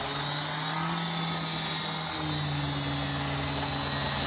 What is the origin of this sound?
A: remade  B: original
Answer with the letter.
B